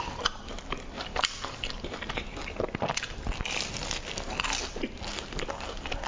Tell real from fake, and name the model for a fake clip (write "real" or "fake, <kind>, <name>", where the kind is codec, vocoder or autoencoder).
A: real